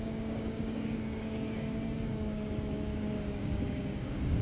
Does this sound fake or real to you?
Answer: fake